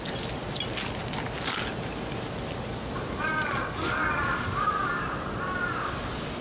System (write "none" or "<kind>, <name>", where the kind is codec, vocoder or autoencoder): none